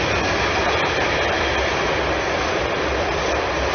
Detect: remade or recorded recorded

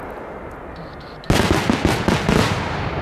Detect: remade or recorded recorded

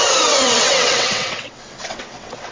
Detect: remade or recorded remade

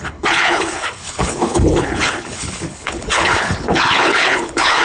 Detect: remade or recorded remade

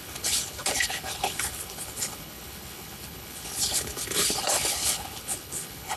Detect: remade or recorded remade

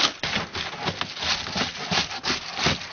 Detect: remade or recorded recorded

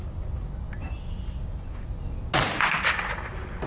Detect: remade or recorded recorded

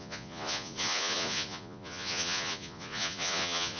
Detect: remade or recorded remade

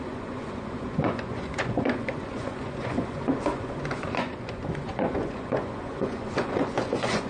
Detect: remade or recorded remade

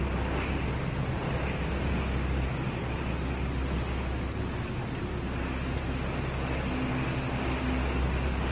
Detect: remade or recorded recorded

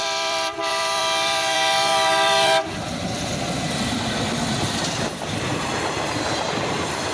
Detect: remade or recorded remade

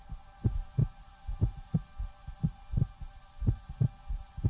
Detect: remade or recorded recorded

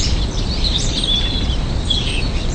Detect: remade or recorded recorded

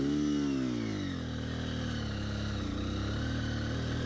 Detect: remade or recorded recorded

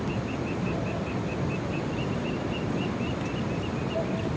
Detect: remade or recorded recorded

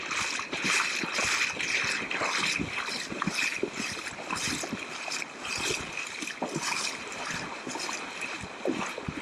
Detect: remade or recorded recorded